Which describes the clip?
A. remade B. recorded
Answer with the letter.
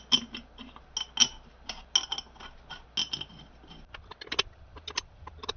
B